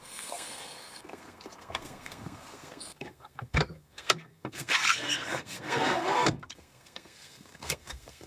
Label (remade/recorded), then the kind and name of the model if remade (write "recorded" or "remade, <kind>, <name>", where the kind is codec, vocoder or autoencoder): remade, codec, SNAC